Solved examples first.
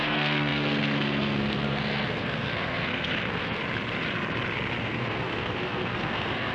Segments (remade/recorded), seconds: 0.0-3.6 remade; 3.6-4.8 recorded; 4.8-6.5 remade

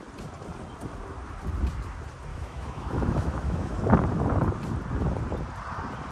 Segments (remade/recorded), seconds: 0.0-2.3 recorded; 2.3-3.8 remade; 3.8-6.1 recorded

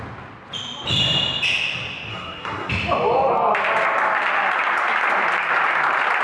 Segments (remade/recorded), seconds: 0.0-2.1 recorded; 2.1-2.7 remade; 2.7-6.2 recorded